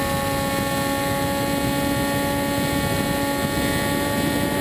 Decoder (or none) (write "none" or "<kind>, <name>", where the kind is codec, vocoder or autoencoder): none